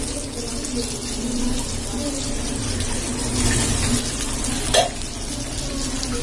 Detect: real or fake real